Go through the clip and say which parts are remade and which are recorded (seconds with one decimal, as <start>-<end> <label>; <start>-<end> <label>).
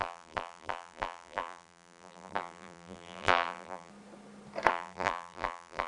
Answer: 0.0-3.9 remade; 3.9-4.7 recorded; 4.7-5.9 remade